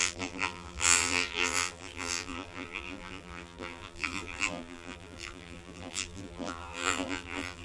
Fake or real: fake